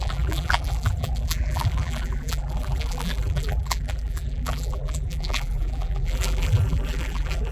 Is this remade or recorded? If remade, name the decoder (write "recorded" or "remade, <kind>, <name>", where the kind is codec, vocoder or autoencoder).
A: remade, vocoder, BigVGAN v2